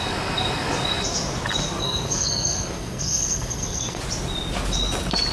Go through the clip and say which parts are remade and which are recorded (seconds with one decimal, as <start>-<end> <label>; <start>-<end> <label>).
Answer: 0.0-1.8 recorded; 1.8-4.0 remade; 4.0-5.3 recorded